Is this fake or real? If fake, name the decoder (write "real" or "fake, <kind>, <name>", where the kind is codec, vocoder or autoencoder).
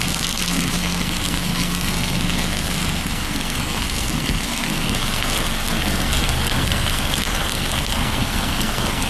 fake, codec, SNAC